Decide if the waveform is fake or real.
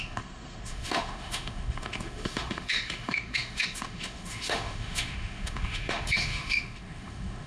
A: fake